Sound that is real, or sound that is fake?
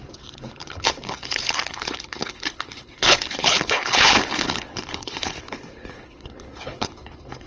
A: fake